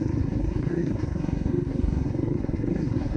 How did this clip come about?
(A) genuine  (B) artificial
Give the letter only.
B